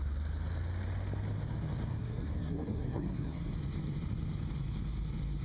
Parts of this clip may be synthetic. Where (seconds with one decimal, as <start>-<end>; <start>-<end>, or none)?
1.9-3.5